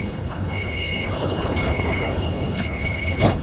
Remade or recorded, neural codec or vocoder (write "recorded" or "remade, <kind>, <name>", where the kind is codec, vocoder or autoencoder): remade, codec, HILCodec